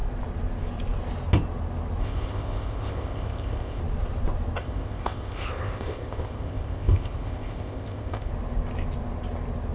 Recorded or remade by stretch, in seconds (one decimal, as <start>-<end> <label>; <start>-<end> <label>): 0.0-2.0 recorded; 2.0-3.8 remade; 3.8-4.6 recorded; 4.6-8.3 remade; 8.3-9.7 recorded